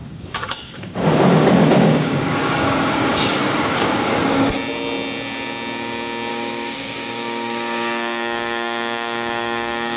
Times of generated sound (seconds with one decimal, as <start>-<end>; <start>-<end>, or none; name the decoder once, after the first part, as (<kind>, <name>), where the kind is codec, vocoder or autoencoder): 0.0-4.2 (codec, DAC); 6.3-10.0